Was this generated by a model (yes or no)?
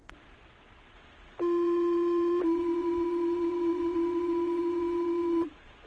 yes